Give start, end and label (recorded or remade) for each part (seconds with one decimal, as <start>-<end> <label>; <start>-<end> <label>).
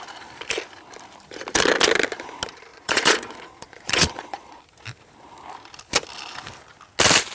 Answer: 0.0-2.7 recorded; 2.7-4.6 remade; 4.6-7.3 recorded